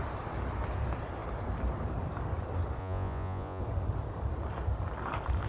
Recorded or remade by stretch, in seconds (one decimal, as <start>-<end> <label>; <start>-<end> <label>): 0.0-2.8 recorded; 2.8-3.6 remade; 3.6-5.5 recorded